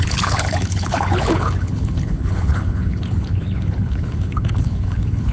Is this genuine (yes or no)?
no